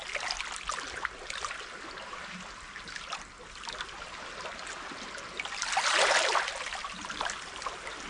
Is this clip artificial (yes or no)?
no